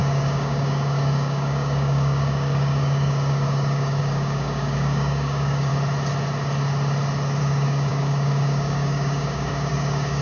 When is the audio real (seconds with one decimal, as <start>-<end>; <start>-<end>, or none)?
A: 5.7-7.4